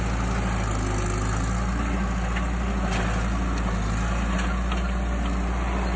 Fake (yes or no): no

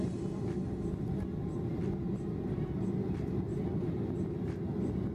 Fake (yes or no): no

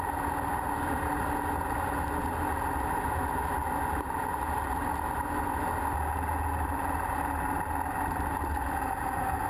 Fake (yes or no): no